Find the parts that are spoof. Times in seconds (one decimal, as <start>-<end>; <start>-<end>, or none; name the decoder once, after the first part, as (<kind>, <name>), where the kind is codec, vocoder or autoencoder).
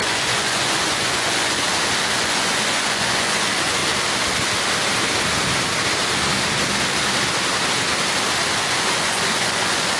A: 0.0-1.7 (vocoder, Vocos); 2.2-3.8; 8.5-10.0